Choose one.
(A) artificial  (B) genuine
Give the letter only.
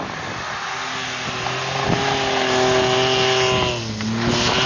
B